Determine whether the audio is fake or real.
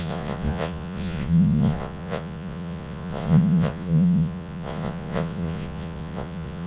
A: fake